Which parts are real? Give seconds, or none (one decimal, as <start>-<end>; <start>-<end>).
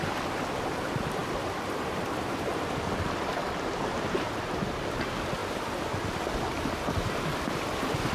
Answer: 0.0-8.1